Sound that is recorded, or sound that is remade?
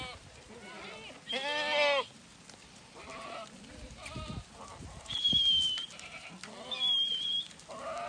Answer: recorded